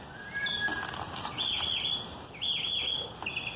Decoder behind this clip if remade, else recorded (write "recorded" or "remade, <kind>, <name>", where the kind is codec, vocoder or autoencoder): recorded